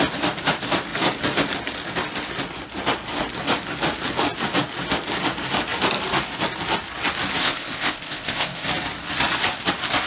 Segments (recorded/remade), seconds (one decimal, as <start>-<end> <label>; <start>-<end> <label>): 0.0-7.4 recorded; 7.4-8.7 remade; 8.7-10.1 recorded